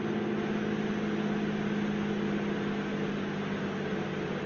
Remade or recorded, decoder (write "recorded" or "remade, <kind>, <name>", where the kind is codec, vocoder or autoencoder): recorded